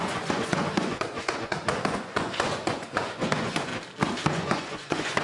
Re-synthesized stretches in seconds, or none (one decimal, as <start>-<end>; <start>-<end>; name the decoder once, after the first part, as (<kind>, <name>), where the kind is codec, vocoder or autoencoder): 0.0-3.7 (vocoder, Vocos); 4.3-5.2